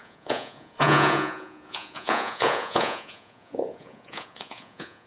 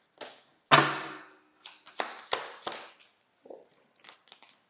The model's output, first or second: first